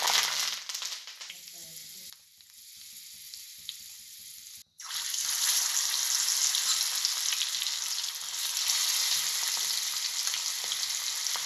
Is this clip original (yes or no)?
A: yes